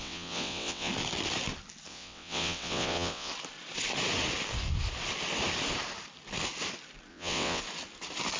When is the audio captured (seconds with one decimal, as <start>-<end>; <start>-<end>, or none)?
0.9-1.9; 3.3-7.1; 7.6-8.4